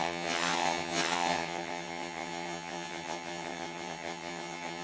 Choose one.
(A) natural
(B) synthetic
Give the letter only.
B